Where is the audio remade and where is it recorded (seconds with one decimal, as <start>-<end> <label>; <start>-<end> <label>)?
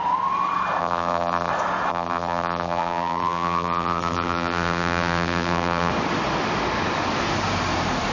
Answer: 0.0-0.8 recorded; 0.8-1.5 remade; 1.5-1.9 recorded; 1.9-5.9 remade; 5.9-8.1 recorded